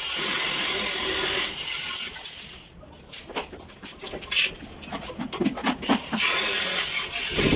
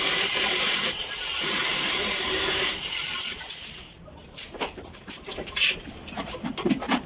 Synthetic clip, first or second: second